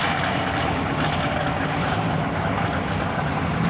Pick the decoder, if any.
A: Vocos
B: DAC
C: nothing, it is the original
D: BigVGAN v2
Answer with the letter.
C